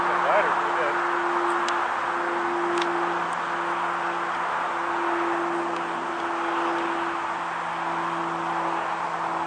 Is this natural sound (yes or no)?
yes